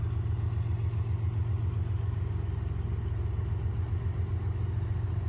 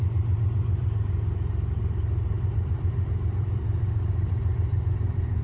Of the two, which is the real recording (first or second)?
first